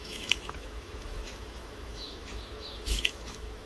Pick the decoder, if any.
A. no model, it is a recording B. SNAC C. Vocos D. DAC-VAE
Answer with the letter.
D